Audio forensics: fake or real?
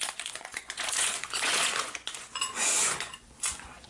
fake